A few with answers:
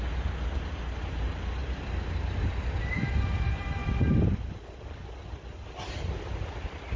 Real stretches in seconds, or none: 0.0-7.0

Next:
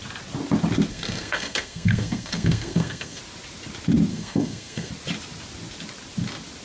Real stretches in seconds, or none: 0.0-0.9; 3.2-4.1; 4.9-6.6

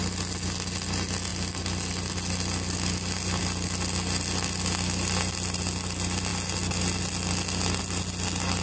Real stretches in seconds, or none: 0.0-8.6